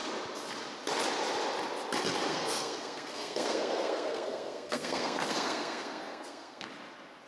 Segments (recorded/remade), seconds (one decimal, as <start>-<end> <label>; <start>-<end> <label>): 0.0-2.3 recorded; 2.3-6.7 remade; 6.7-7.3 recorded